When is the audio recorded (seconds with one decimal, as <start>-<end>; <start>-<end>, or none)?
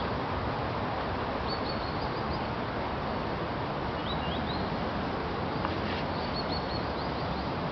0.0-7.7